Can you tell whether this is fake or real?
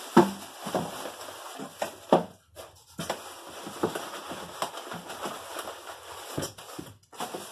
real